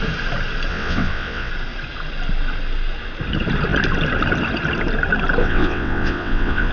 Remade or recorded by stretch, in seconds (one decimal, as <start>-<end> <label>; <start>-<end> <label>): 0.0-0.7 recorded; 0.7-1.5 remade; 1.5-5.4 recorded; 5.4-6.7 remade